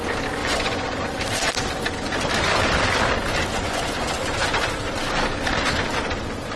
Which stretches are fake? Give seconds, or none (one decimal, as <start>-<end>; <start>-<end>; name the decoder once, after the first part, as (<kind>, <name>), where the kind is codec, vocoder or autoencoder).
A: 0.4-1.1 (vocoder, Vocos); 3.5-4.5